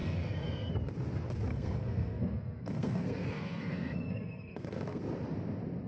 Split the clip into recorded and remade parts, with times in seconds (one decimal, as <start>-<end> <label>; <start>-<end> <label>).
0.0-0.7 remade; 0.7-1.5 recorded; 1.5-5.0 remade; 5.0-5.9 recorded